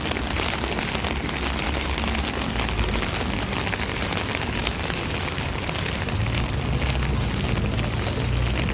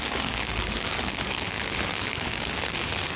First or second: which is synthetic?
second